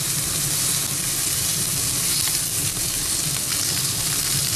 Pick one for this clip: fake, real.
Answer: fake